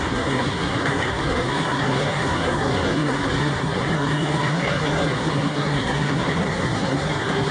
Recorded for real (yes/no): no